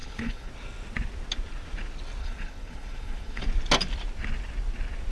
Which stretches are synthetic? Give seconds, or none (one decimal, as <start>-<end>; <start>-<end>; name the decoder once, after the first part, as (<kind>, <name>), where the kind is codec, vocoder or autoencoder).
0.0-0.5 (codec, HILCodec); 2.2-3.4